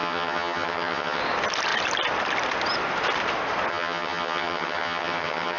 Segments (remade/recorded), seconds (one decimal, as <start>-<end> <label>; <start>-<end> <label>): 0.0-1.2 remade; 1.2-3.7 recorded; 3.7-5.6 remade